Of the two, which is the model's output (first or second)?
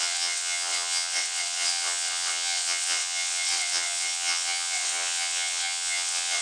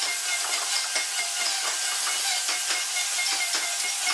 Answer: first